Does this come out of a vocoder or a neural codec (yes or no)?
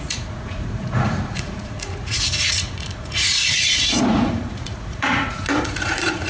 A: yes